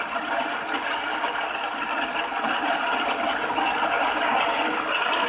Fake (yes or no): no